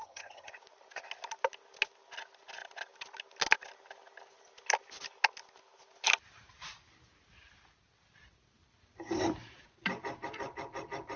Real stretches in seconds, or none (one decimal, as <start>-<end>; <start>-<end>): 0.5-11.2